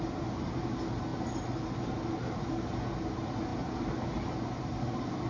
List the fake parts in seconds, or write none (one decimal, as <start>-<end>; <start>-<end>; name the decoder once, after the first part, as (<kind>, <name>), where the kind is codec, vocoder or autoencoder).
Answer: none